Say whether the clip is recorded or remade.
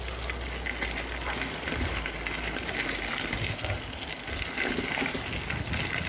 recorded